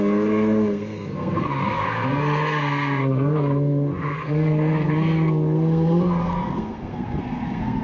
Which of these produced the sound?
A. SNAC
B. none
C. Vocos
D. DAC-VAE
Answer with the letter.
A